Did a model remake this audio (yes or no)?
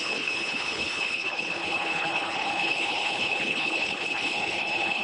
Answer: yes